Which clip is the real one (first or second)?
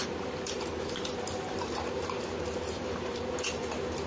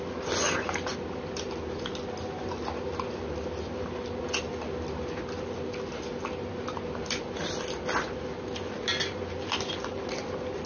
second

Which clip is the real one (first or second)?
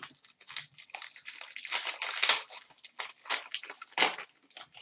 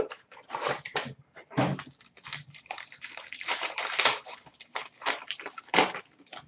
first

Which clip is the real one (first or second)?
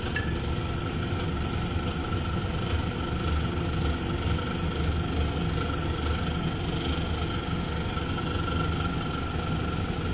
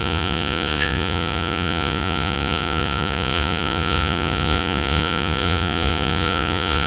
first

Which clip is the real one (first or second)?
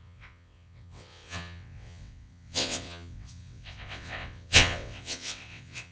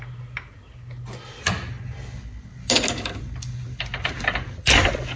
second